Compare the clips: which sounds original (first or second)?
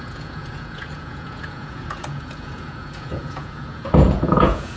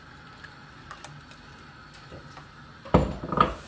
second